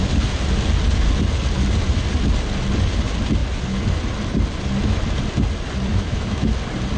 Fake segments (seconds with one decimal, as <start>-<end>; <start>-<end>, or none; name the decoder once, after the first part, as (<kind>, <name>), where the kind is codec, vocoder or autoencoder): 5.9-6.5 (autoencoder, DAC-VAE)